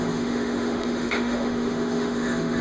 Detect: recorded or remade remade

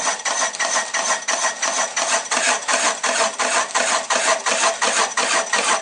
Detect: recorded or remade recorded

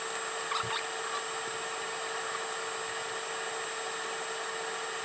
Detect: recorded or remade recorded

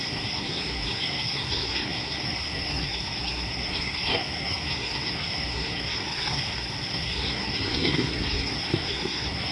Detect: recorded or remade remade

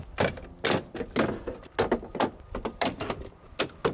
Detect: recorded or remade recorded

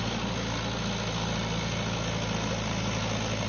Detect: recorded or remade recorded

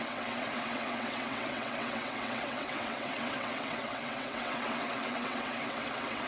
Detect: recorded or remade remade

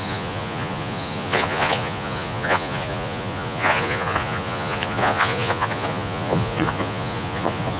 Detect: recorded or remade remade